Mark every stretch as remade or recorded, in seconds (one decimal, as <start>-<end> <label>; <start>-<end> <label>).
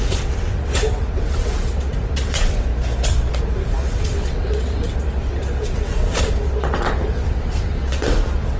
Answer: 0.0-2.7 remade; 2.7-3.4 recorded; 3.4-8.6 remade